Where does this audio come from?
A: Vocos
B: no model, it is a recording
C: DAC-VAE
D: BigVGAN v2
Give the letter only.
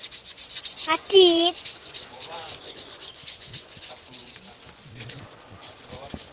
A